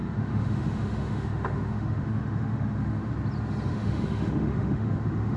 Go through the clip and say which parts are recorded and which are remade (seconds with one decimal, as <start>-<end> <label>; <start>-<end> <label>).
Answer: 0.0-3.1 remade; 3.1-3.7 recorded; 3.7-5.4 remade